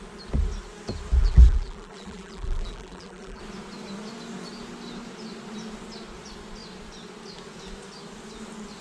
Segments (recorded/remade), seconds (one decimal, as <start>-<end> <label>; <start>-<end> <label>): 0.0-1.2 recorded; 1.2-3.4 remade; 3.4-8.8 recorded